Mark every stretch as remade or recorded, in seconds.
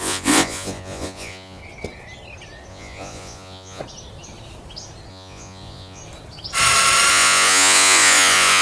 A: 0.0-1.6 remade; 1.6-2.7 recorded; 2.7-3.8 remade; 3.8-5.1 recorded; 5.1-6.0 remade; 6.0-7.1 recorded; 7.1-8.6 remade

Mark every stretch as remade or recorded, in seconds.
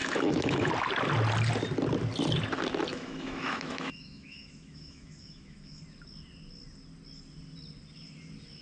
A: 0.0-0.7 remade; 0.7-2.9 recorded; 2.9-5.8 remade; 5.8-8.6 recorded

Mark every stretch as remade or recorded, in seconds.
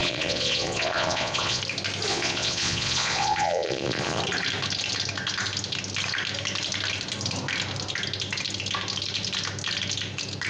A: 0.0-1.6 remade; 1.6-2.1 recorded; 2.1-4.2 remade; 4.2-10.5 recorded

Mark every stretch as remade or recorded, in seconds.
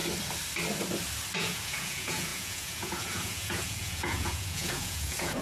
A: 0.0-1.4 recorded; 1.4-5.4 remade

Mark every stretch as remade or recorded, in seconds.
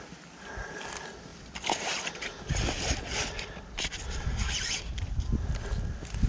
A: 0.0-1.3 recorded; 1.3-5.1 remade; 5.1-6.3 recorded